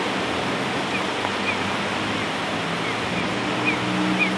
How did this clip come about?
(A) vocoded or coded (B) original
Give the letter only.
B